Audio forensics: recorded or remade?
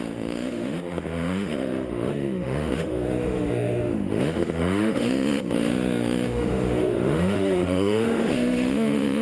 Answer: remade